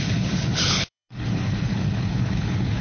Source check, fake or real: fake